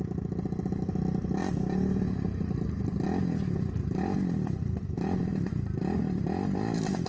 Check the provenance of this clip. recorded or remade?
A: recorded